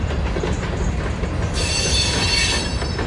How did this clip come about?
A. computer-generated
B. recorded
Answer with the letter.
B